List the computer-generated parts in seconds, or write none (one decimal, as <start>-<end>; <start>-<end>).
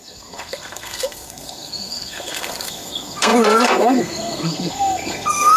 0.0-5.6